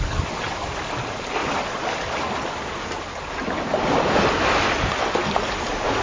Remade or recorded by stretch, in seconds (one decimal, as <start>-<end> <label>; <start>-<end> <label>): 0.0-6.0 recorded